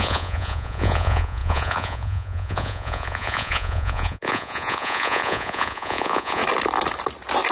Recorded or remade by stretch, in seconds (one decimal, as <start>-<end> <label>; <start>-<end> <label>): 0.0-6.4 remade; 6.4-7.5 recorded